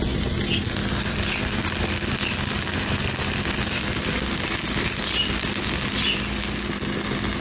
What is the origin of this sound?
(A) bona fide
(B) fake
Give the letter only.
A